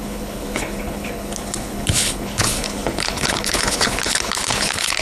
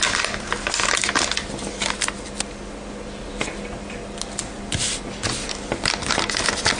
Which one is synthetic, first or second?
first